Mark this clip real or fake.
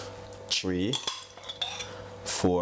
real